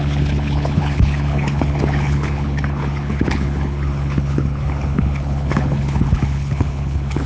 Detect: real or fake fake